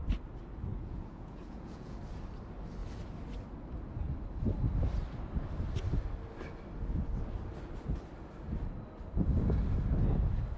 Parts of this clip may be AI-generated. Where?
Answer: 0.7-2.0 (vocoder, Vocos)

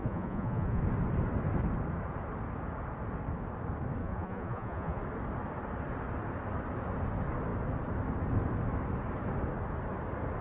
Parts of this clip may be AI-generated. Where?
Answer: 0.0-0.8 (vocoder, Vocos); 4.0-5.0

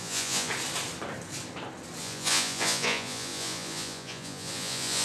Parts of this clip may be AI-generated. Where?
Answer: 0.0-0.5 (vocoder, Vocos); 2.0-5.0

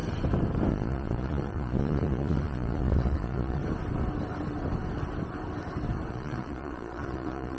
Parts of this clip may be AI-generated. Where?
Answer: 0.7-3.6 (vocoder, Vocos); 6.1-7.6

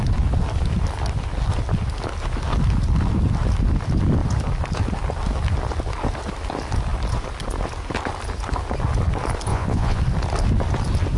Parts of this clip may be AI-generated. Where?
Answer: 9.5-10.0 (vocoder, Vocos)

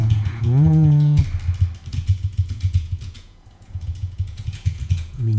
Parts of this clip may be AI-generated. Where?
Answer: 0.0-1.2 (vocoder, Vocos); 1.9-5.4